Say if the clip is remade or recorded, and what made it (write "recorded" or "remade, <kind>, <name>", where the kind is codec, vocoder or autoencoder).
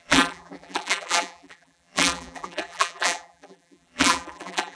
remade, vocoder, BigVGAN v2